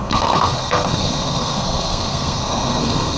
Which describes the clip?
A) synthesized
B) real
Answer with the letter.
A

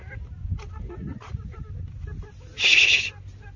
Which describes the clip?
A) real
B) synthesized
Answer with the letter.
A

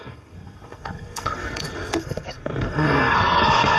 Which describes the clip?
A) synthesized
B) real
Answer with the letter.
A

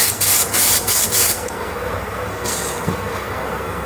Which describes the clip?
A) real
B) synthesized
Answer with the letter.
B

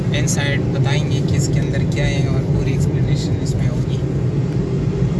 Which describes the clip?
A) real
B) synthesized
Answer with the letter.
A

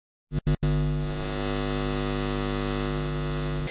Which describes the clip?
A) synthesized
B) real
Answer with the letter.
B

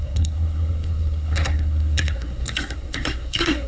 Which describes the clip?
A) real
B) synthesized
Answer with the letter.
B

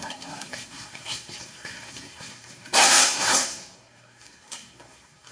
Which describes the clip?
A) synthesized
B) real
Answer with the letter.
A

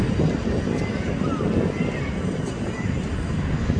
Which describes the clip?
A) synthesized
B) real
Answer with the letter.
B